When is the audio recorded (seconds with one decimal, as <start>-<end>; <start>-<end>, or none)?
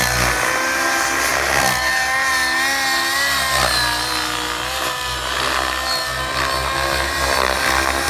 0.0-8.1